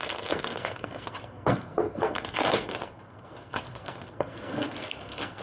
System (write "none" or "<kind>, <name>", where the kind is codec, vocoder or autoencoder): codec, SNAC